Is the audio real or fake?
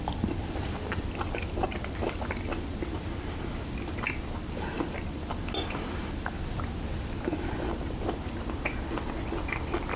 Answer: fake